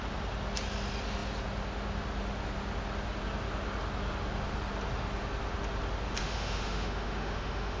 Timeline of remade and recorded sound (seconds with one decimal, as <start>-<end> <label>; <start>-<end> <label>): 0.0-6.2 recorded; 6.2-7.8 remade